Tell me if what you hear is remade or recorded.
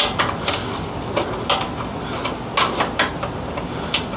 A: recorded